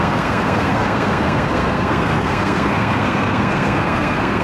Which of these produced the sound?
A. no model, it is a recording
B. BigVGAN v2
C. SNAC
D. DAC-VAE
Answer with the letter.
C